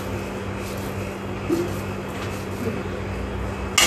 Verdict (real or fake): real